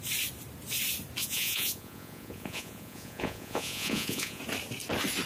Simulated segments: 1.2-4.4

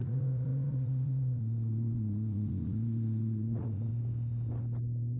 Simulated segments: 0.0-3.9

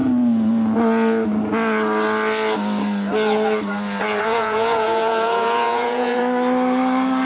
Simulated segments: 4.2-6.2

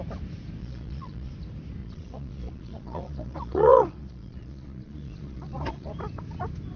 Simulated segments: 0.6-1.3; 1.8-5.9

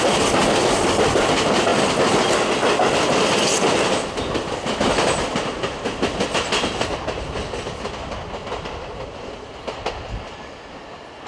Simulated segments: none

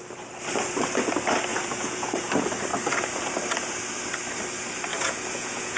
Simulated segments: 1.5-2.3; 4.9-5.8

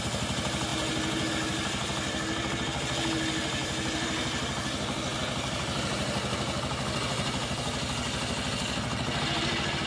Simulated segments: none